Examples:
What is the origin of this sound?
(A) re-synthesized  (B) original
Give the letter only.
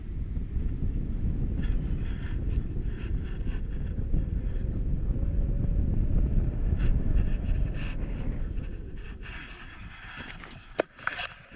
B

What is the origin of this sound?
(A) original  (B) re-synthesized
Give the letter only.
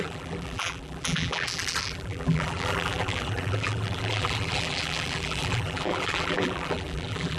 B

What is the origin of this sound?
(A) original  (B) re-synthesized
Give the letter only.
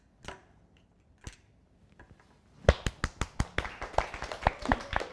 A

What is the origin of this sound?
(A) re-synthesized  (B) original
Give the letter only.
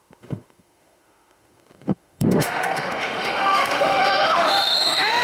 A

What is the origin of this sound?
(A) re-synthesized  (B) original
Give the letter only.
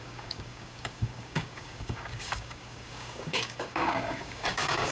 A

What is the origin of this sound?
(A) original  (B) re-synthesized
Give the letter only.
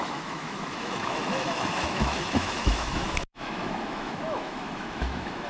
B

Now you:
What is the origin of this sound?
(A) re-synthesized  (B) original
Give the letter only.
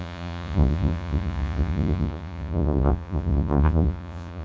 A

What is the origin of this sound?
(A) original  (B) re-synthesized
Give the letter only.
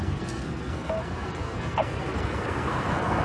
B